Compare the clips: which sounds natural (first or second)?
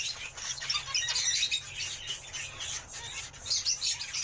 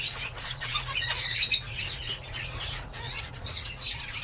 first